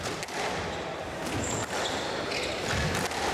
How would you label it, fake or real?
real